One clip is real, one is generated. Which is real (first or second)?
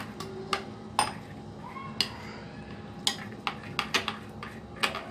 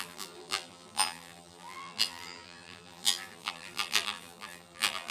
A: first